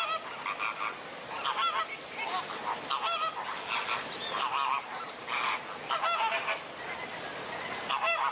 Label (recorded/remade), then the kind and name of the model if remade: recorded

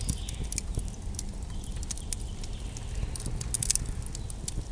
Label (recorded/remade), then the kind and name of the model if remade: recorded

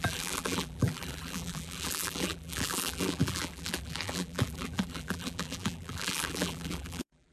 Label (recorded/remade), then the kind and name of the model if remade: remade, vocoder, BigVGAN v2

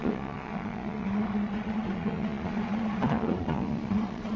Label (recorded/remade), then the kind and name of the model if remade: remade, vocoder, Vocos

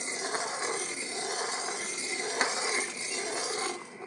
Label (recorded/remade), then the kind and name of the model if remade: recorded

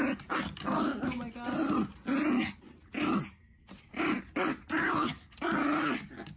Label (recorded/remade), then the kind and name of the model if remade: recorded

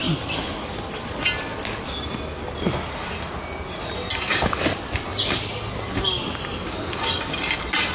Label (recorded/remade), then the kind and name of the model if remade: recorded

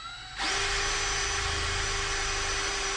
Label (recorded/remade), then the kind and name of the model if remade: recorded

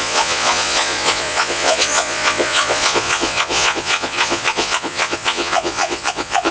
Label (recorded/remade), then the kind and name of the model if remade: remade, vocoder, Vocos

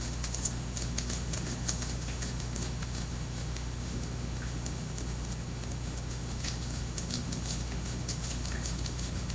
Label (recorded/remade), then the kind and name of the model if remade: remade, autoencoder, DAC-VAE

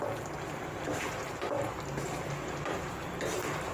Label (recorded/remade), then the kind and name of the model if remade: recorded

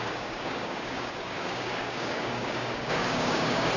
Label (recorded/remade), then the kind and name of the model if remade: remade, codec, DAC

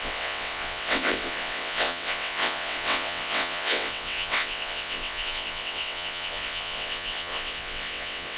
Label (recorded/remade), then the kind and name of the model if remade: remade, vocoder, WaveNeXt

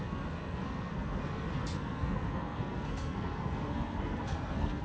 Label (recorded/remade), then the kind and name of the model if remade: remade, codec, SNAC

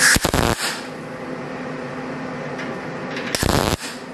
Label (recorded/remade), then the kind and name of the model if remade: recorded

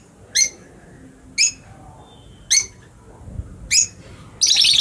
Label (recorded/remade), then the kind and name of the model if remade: recorded